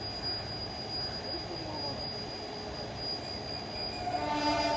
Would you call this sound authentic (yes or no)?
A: yes